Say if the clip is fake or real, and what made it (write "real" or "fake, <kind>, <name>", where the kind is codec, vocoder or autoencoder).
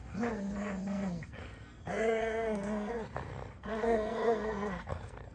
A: fake, codec, SNAC